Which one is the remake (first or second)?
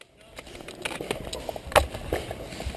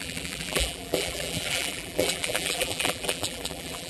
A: second